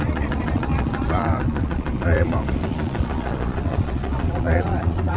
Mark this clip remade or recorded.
remade